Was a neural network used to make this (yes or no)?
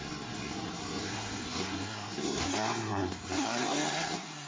yes